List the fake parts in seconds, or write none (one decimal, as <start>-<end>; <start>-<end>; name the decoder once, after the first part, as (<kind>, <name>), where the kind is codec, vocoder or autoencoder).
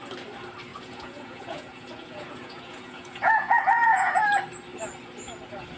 0.7-4.2 (vocoder, Vocos)